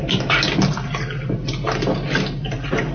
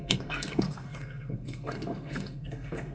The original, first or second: first